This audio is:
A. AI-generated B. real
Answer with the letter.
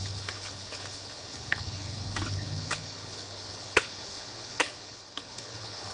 A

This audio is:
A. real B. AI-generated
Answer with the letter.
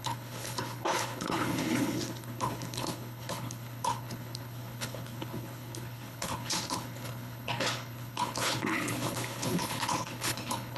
B